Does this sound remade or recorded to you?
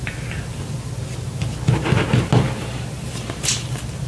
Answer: recorded